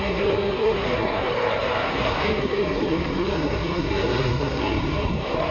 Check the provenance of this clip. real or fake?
fake